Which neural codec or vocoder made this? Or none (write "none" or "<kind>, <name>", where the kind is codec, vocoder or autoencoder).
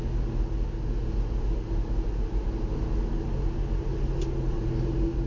none